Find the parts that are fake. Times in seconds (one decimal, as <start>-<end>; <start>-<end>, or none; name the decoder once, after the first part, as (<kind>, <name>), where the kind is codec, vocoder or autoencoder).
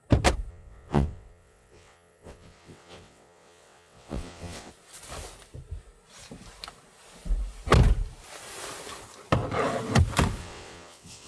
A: 0.5-4.7 (vocoder, WaveNeXt); 10.4-11.3